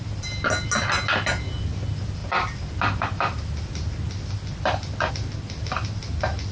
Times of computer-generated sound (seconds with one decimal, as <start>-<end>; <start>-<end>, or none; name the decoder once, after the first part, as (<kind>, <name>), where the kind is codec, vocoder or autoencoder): none